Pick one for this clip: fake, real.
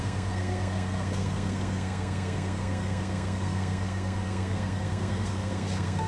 fake